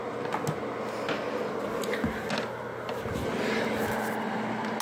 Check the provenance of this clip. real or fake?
real